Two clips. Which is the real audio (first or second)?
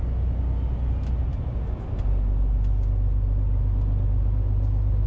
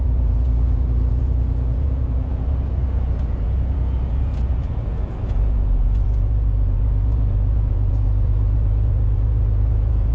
first